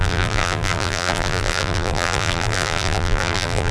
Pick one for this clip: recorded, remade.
remade